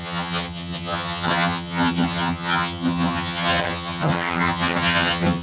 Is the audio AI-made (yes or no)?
yes